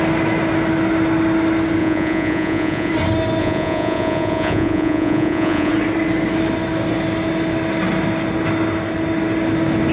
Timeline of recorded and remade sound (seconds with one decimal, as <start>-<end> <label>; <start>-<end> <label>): 0.0-1.8 recorded; 1.8-2.9 remade; 2.9-3.4 recorded; 3.4-5.7 remade; 5.7-9.9 recorded